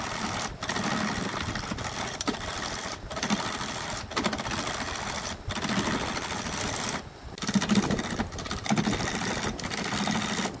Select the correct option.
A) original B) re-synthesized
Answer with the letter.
A